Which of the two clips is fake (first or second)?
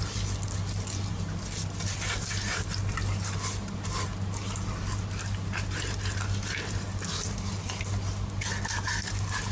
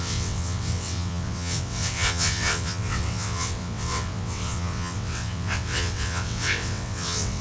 second